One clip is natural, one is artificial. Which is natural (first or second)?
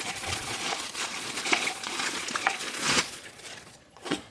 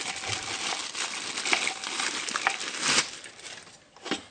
second